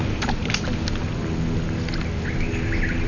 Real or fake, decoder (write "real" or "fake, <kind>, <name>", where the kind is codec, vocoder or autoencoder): real